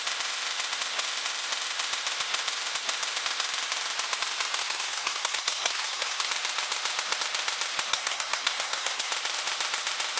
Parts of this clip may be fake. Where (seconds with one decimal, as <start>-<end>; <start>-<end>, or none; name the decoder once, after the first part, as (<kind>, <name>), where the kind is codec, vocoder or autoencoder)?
4.6-6.3 (codec, SNAC); 7.9-9.1